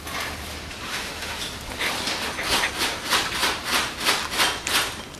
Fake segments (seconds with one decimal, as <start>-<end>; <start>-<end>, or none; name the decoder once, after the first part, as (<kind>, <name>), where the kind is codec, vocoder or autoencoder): 0.8-1.4 (autoencoder, DAC-VAE)